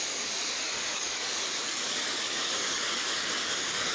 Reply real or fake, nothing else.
fake